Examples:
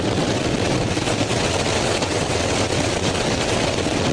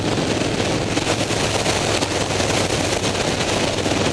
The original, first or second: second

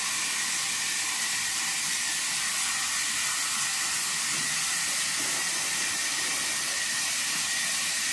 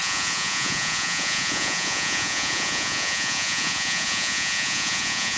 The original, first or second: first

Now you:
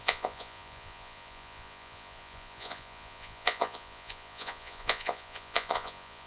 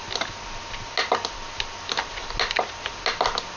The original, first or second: second